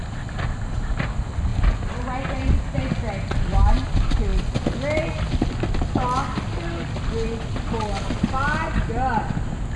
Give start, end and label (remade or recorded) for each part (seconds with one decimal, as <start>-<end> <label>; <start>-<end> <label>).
0.0-9.8 recorded